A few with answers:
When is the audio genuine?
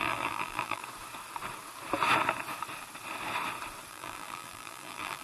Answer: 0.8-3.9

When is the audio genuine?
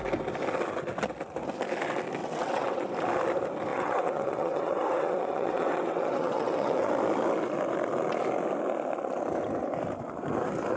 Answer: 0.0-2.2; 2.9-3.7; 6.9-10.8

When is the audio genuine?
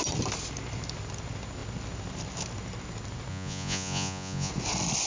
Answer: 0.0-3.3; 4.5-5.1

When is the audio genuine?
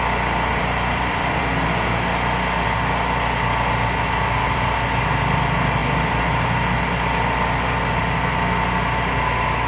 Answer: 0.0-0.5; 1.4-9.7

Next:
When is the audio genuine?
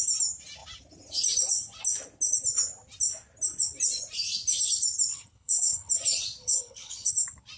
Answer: 0.0-5.1; 5.9-6.4; 7.1-7.6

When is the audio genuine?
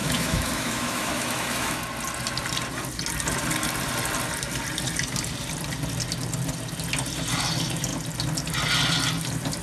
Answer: 1.8-9.6